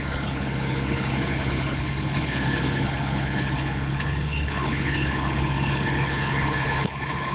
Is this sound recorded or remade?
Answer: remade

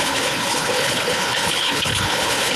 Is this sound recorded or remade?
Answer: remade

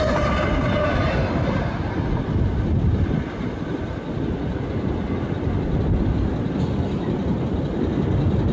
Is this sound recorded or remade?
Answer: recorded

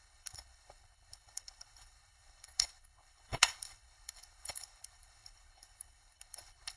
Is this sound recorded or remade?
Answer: remade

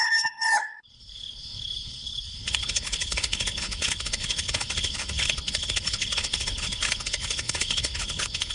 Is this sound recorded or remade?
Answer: remade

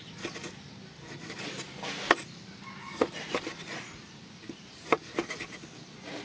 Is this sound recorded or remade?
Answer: recorded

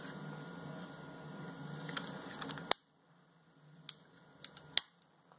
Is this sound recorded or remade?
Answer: recorded